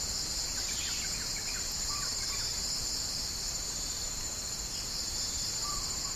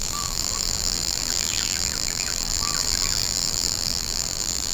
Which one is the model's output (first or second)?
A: second